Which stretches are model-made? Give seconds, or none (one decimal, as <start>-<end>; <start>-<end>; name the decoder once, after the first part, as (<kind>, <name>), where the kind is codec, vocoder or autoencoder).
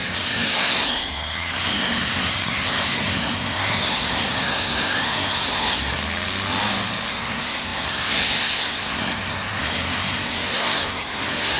0.0-6.0 (codec, SNAC); 7.1-11.6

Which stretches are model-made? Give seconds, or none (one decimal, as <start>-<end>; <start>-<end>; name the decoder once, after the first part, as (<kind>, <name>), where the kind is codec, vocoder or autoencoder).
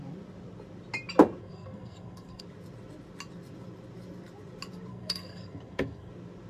1.4-2.4 (codec, SNAC); 4.9-6.1